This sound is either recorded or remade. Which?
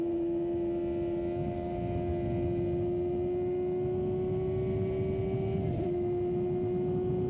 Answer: recorded